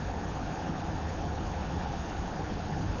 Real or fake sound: fake